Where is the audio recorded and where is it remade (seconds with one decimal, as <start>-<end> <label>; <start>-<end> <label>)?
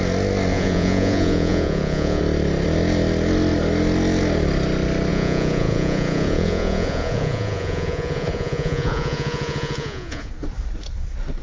0.0-0.5 recorded; 0.5-2.2 remade; 2.2-5.1 recorded; 5.1-10.3 remade; 10.3-11.4 recorded